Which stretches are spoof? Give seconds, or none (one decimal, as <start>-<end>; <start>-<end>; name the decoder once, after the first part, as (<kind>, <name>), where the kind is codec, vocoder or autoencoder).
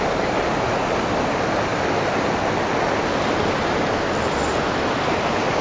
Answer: none